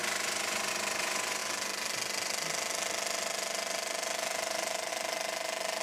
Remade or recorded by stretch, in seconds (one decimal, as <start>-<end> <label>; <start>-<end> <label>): 0.0-5.8 recorded